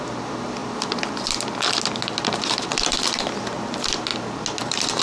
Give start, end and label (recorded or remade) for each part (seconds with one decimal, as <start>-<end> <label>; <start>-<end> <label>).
0.0-0.6 remade; 0.6-2.0 recorded; 2.0-4.1 remade; 4.1-4.6 recorded; 4.6-5.0 remade